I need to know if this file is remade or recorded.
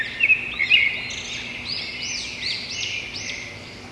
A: recorded